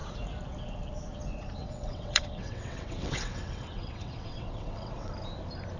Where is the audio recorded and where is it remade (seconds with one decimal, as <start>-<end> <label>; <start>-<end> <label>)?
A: 0.0-1.6 recorded; 1.6-5.1 remade; 5.1-5.8 recorded